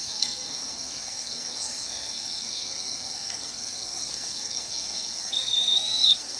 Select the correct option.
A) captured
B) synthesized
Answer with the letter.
B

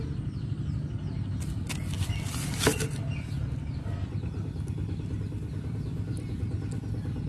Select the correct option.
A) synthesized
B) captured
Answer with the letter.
B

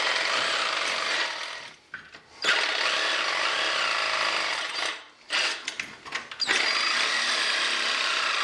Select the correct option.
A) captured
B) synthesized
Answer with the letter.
A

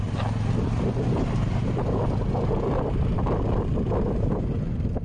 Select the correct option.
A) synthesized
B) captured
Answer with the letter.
B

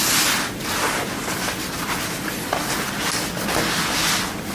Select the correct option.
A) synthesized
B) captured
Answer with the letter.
B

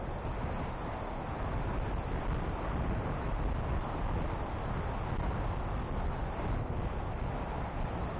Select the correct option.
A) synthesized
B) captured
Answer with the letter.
B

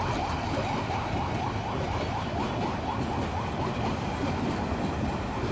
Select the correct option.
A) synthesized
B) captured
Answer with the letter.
B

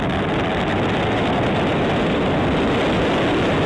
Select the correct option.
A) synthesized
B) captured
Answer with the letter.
B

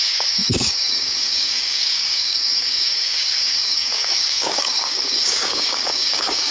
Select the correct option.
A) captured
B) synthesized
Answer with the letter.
B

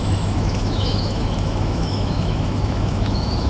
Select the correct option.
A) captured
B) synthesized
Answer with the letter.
B